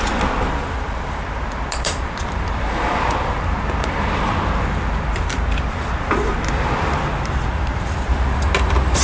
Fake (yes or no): yes